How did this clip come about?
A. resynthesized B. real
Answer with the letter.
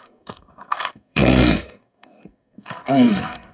A